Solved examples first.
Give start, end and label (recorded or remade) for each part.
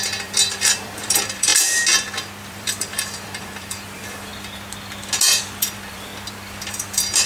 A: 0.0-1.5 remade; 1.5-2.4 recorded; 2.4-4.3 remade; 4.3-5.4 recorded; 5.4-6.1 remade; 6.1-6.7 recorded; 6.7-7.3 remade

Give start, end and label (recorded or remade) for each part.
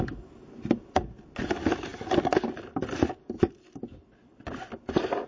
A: 0.0-5.3 recorded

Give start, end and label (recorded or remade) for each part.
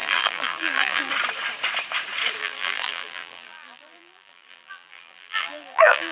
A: 0.0-1.1 remade; 1.1-2.4 recorded; 2.4-6.1 remade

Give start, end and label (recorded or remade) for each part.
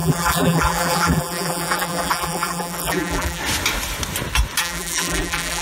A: 0.0-3.4 remade; 3.4-4.6 recorded; 4.6-5.6 remade